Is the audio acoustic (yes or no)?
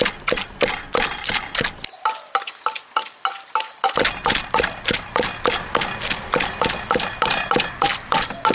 yes